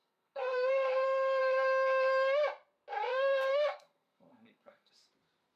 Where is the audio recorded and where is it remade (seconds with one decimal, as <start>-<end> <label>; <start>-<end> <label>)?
0.0-0.7 remade; 0.7-3.1 recorded; 3.1-4.9 remade; 4.9-5.6 recorded